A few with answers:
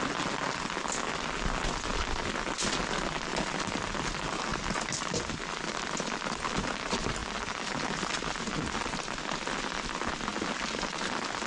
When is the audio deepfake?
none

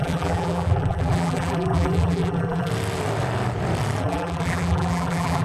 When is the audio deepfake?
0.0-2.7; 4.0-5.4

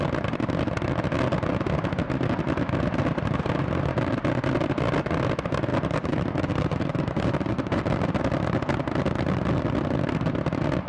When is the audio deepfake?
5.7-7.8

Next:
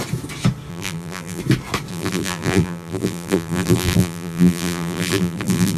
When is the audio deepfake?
0.7-1.4; 1.9-5.8